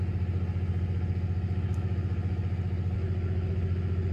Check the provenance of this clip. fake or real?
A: real